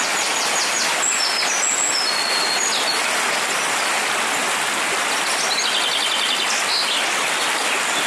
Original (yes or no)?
yes